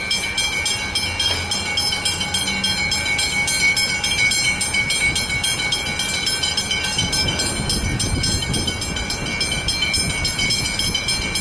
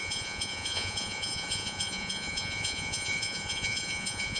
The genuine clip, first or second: first